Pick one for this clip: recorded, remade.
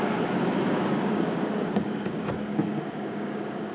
remade